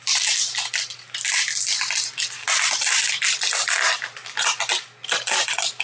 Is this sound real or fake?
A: real